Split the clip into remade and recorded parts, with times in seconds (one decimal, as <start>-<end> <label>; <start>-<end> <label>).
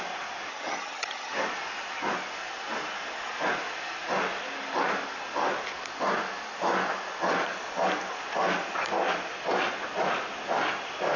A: 0.0-0.5 recorded; 0.5-1.3 remade; 1.3-11.2 recorded